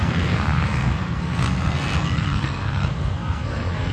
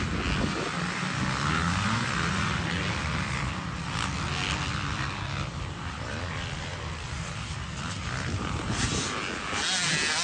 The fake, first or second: first